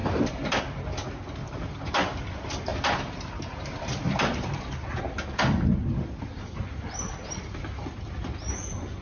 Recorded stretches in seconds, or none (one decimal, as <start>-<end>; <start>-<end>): 0.6-1.4; 1.9-2.7; 4.6-9.0